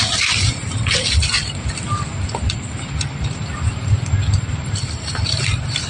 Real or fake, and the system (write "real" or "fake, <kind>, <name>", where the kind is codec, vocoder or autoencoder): real